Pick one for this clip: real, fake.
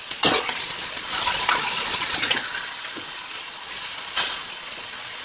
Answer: fake